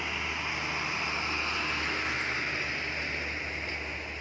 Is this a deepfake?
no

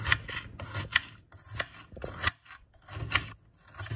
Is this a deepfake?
no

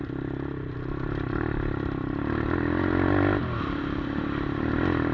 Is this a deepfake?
no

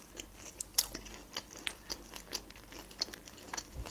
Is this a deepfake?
no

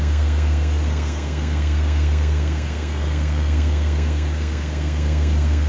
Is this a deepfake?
yes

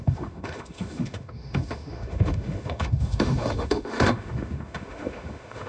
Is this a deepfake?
yes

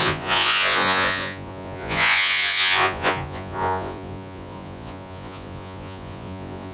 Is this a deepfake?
yes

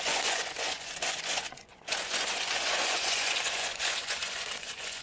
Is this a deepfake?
yes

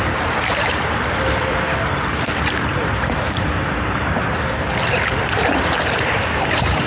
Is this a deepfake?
yes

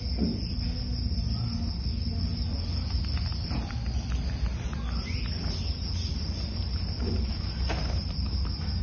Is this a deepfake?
no